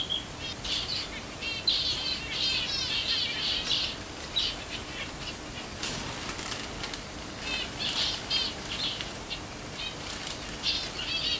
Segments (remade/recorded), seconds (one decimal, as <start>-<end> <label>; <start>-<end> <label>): 0.0-11.4 recorded